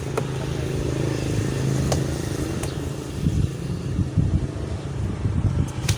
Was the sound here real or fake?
real